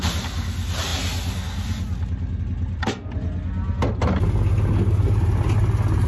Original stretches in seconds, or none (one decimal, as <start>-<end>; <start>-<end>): 0.0-6.1